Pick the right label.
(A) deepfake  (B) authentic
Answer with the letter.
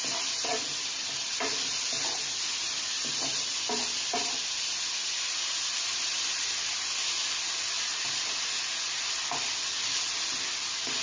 B